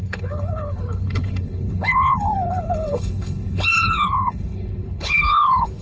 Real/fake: fake